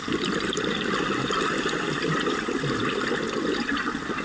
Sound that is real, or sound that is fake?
real